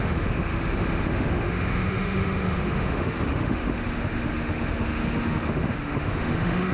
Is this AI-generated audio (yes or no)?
yes